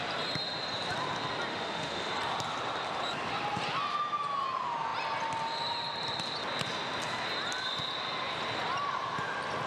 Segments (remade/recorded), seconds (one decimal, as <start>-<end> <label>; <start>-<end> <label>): 0.0-1.5 recorded; 1.5-2.1 remade; 2.1-9.7 recorded